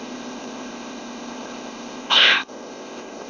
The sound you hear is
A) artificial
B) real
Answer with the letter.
A